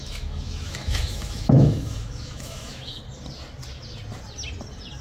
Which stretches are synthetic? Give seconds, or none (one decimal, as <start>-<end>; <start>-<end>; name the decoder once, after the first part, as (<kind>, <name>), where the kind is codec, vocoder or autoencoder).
0.0-3.0 (autoencoder, DAC-VAE)